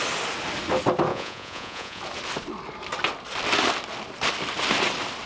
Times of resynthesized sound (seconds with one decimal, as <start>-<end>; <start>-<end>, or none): 1.1-2.0